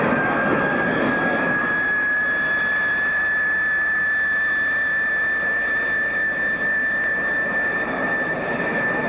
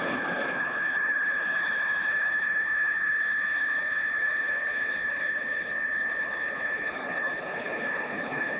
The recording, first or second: first